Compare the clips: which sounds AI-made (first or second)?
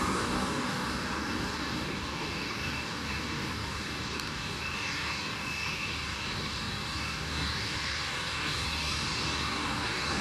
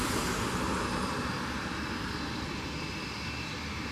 first